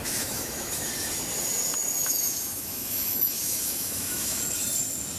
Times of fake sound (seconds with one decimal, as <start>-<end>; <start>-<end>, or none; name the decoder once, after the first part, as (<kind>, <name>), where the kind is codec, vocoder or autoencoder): 0.0-0.9 (autoencoder, DAC-VAE); 2.0-4.4